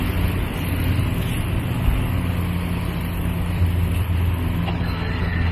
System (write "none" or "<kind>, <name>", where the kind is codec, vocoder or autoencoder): none